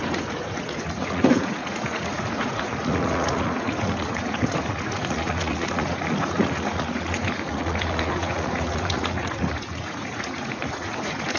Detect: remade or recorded remade